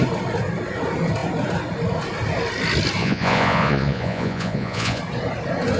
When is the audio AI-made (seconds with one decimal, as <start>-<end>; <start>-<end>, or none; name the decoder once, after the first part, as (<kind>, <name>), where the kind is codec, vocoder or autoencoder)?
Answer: 3.0-5.0 (vocoder, Vocos)